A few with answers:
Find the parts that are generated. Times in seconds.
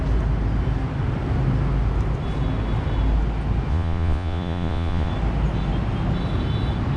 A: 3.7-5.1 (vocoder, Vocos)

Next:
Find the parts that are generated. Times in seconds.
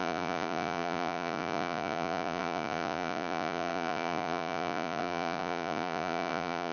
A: 0.0-6.7 (vocoder, Vocos)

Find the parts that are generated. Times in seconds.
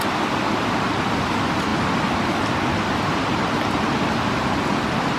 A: none